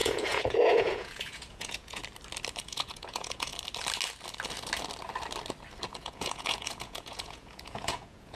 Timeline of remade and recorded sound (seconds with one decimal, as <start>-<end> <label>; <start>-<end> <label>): 0.0-2.0 remade; 2.0-2.6 recorded; 2.6-3.5 remade; 3.5-5.9 recorded; 5.9-8.3 remade